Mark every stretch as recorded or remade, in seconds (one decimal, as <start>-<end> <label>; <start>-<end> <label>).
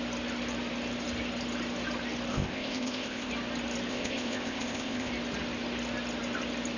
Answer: 0.0-2.3 recorded; 2.3-3.3 remade; 3.3-3.9 recorded; 3.9-5.1 remade; 5.1-6.8 recorded